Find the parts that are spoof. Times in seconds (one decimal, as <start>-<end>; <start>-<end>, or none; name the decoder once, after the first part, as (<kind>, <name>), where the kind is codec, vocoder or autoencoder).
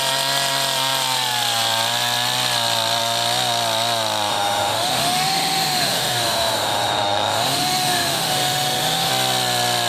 4.3-9.1 (autoencoder, DAC-VAE)